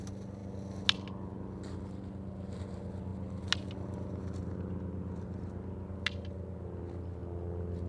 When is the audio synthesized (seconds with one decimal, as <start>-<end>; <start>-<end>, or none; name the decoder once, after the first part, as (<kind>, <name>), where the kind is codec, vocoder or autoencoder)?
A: none